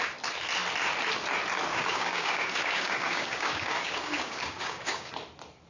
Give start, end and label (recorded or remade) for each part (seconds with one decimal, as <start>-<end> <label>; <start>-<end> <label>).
0.0-1.7 recorded; 1.7-5.1 remade; 5.1-5.7 recorded